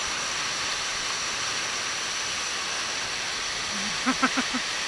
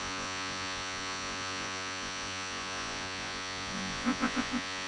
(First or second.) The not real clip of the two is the second